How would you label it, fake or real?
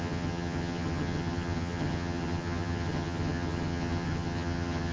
fake